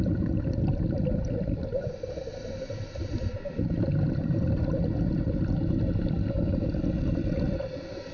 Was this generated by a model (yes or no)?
yes